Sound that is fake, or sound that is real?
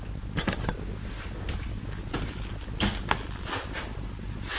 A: real